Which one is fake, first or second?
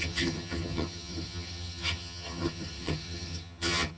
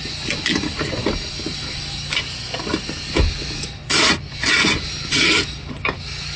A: first